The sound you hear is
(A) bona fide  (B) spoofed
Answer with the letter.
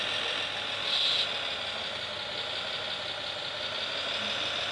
A